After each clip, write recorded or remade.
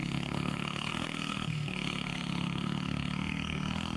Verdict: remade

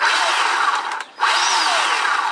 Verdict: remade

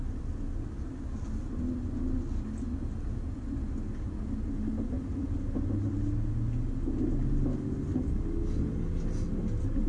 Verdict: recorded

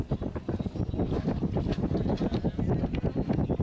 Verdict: recorded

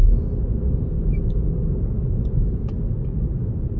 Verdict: recorded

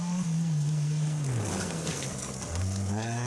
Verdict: remade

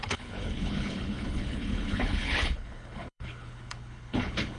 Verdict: remade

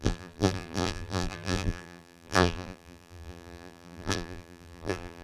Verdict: remade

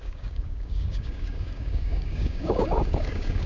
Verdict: remade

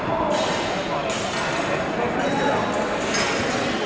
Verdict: recorded